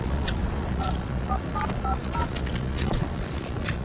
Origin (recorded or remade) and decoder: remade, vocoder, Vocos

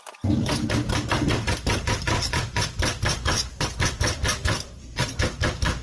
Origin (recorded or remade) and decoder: remade, vocoder, BigVGAN v2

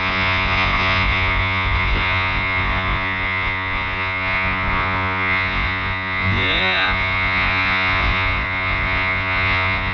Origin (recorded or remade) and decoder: remade, vocoder, Vocos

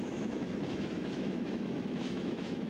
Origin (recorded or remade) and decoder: remade, autoencoder, DAC-VAE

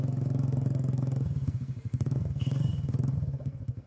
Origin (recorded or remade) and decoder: remade, codec, SNAC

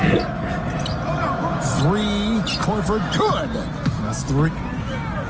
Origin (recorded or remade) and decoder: recorded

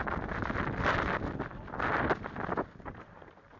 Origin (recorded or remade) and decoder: recorded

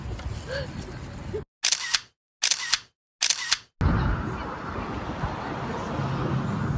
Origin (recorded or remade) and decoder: recorded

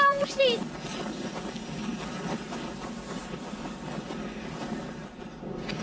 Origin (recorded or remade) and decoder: recorded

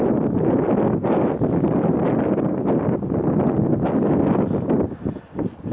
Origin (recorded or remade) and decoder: recorded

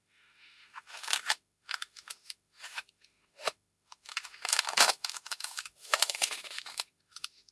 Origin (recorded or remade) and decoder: remade, autoencoder, DAC-VAE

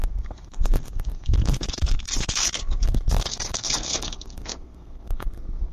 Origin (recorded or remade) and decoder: remade, codec, SNAC